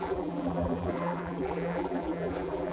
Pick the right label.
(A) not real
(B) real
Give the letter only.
A